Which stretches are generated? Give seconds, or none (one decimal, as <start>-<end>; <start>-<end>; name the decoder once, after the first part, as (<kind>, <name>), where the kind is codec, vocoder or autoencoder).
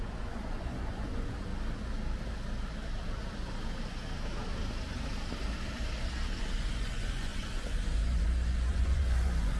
0.0-1.5 (vocoder, Vocos); 6.4-9.6